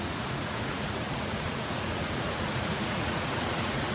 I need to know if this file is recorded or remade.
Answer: remade